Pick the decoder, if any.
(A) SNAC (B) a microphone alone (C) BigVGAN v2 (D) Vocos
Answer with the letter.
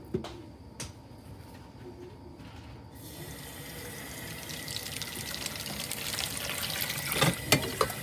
B